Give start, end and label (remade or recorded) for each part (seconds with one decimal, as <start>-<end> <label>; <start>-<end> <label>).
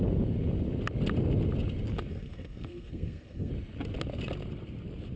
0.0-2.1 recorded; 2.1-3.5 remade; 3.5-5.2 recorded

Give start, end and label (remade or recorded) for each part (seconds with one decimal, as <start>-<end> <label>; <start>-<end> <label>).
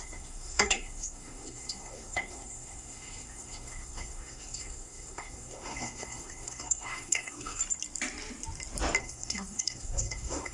0.0-7.6 remade; 7.6-9.0 recorded; 9.0-10.5 remade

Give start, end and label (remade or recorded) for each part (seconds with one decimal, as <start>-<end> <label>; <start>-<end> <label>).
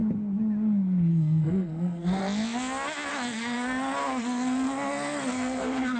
0.0-1.1 recorded; 1.1-2.2 remade; 2.2-3.1 recorded; 3.1-6.0 remade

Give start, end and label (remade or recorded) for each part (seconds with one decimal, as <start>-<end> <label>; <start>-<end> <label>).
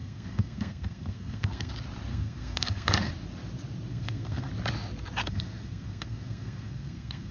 0.0-1.7 remade; 1.7-2.1 recorded; 2.1-3.1 remade; 3.1-3.9 recorded; 3.9-4.5 remade; 4.5-5.2 recorded; 5.2-7.3 remade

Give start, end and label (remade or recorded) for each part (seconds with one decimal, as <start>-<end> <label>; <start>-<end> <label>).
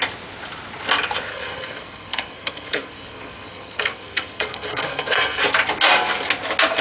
0.0-1.3 recorded; 1.3-5.4 remade; 5.4-6.8 recorded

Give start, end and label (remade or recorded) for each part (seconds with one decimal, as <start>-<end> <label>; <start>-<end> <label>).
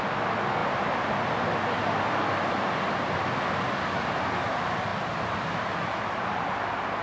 0.0-7.0 recorded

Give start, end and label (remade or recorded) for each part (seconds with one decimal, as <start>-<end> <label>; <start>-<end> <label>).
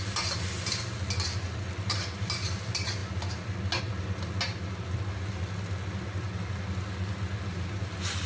0.0-8.3 recorded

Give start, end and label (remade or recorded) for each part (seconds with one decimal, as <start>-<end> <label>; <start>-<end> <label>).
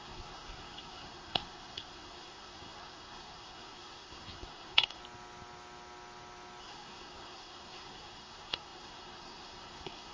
0.0-5.0 remade; 5.0-6.6 recorded; 6.6-10.1 remade